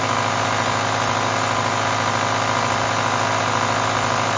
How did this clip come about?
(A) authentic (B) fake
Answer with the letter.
A